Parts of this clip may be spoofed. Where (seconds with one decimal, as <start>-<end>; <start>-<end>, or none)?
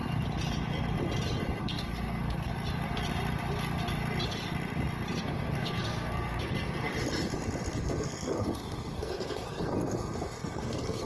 1.6-2.5; 5.2-6.9; 7.7-11.1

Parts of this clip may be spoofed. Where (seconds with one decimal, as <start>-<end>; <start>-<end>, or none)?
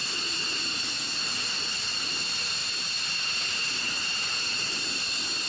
1.1-2.2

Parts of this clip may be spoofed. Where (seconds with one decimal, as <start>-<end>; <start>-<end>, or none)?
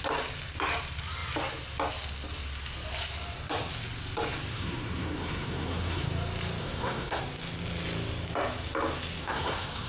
4.5-6.1; 6.6-7.2; 9.2-9.9